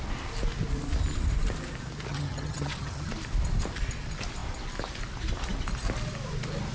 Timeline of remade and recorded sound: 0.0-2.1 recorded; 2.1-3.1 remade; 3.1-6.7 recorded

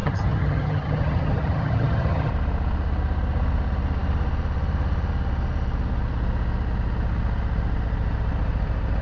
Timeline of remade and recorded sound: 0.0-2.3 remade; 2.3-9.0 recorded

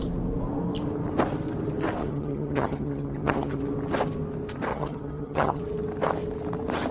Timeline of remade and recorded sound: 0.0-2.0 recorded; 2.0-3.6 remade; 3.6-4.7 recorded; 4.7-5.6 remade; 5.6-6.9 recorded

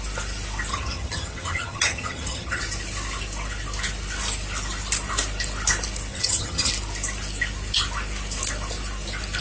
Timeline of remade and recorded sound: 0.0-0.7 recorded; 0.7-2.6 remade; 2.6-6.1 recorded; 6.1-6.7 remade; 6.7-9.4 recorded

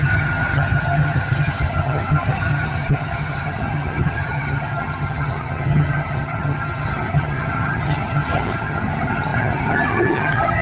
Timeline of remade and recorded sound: 0.0-10.6 remade